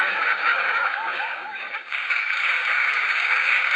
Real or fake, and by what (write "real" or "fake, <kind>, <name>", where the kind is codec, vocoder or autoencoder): fake, codec, DAC